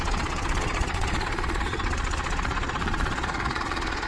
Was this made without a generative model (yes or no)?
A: no